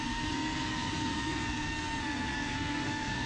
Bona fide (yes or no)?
no